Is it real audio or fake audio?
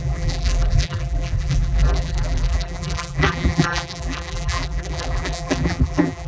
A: fake